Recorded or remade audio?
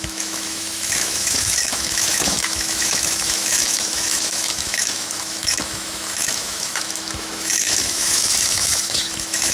remade